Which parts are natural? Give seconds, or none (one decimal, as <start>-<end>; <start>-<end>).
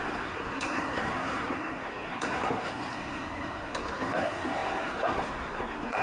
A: none